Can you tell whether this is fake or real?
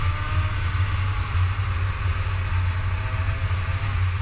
real